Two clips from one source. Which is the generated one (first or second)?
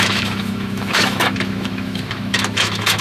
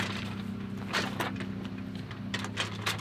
first